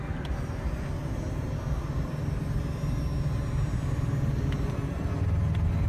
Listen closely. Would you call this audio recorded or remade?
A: recorded